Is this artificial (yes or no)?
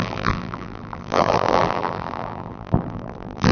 yes